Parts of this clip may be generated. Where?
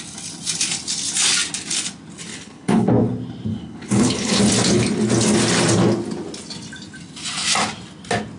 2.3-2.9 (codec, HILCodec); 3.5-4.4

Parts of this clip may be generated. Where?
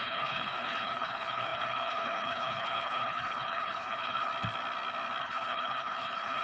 0.0-4.3 (codec, HILCodec); 5.2-6.4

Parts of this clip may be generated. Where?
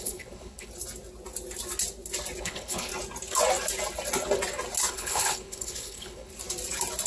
0.0-0.7 (codec, HILCodec); 2.4-2.9; 4.9-6.3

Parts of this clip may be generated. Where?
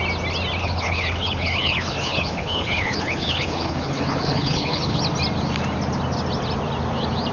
0.6-5.0 (codec, HILCodec)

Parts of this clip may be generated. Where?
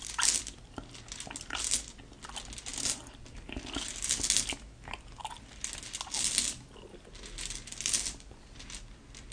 none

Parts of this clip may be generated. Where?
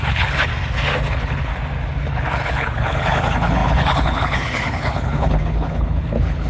0.0-0.5 (codec, HILCodec); 1.1-1.5; 2.1-6.5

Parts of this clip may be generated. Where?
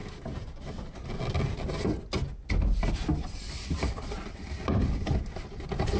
none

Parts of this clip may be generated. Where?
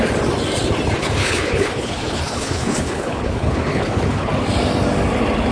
1.0-4.3 (codec, HILCodec)